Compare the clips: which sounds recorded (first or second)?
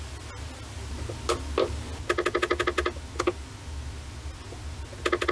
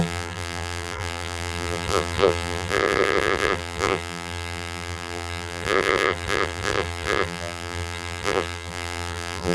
first